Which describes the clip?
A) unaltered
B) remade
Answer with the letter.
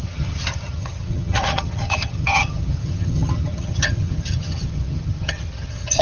B